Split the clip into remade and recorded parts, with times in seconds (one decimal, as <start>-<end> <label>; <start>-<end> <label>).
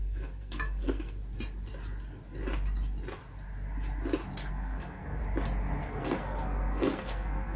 0.0-1.2 remade; 1.2-4.5 recorded; 4.5-5.2 remade; 5.2-5.8 recorded; 5.8-7.6 remade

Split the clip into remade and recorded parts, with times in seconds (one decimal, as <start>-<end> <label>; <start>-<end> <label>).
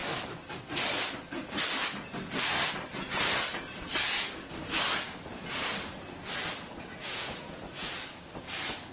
0.0-7.0 recorded; 7.0-7.9 remade; 7.9-8.9 recorded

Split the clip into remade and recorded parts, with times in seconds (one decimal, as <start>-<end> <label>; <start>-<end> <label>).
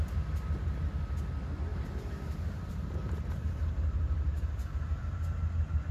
0.0-1.7 recorded; 1.7-5.2 remade; 5.2-5.9 recorded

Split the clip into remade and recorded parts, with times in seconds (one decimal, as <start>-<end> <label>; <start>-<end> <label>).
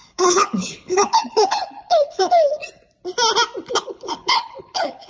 0.0-2.6 remade; 2.6-3.7 recorded; 3.7-5.1 remade